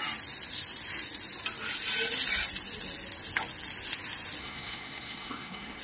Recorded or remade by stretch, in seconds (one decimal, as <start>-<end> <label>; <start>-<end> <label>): 0.0-4.4 recorded; 4.4-5.8 remade